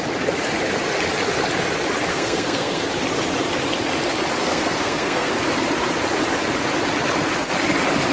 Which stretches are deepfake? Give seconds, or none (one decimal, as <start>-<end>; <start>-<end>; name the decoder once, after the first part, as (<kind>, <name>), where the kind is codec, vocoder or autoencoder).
2.1-2.9 (codec, SNAC); 4.4-5.3